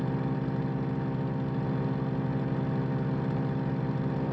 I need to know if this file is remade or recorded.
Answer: recorded